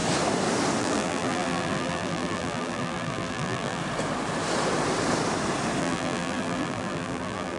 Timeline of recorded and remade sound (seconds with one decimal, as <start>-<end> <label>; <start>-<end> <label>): 0.0-0.8 recorded; 0.8-3.8 remade; 3.8-5.8 recorded; 5.8-7.6 remade